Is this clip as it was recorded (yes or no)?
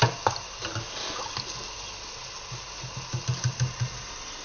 yes